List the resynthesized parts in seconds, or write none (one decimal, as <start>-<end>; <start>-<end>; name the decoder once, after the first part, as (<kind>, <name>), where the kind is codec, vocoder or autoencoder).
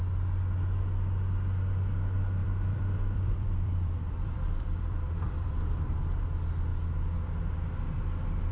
2.4-5.9 (vocoder, BigVGAN v2)